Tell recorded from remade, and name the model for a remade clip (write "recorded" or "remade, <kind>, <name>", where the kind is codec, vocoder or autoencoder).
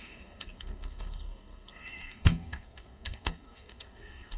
remade, codec, SNAC